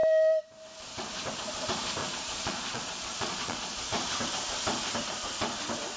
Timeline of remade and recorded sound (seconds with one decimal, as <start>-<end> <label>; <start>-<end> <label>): 0.0-2.0 recorded; 2.0-3.9 remade; 3.9-6.0 recorded